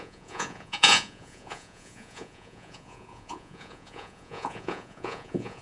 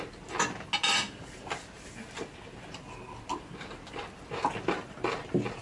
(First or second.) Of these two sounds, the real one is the second